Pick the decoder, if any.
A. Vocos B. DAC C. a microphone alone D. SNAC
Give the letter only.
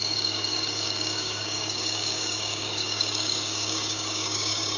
B